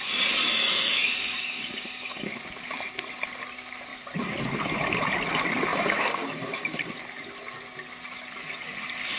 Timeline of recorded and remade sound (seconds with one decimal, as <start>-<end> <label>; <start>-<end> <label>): 0.0-0.6 recorded; 0.6-2.4 remade; 2.4-5.7 recorded; 5.7-6.9 remade; 6.9-9.2 recorded